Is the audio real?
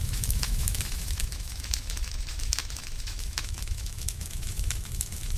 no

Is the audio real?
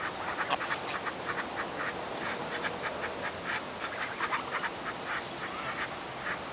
yes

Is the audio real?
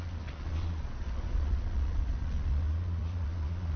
no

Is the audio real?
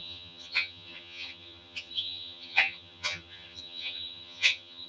no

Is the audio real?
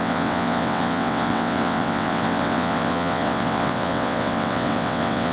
no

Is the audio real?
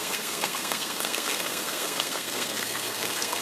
no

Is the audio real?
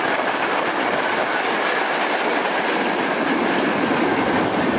yes